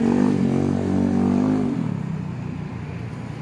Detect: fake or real real